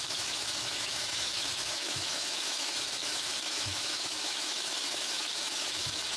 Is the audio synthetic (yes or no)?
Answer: yes